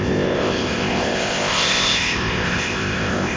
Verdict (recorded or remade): remade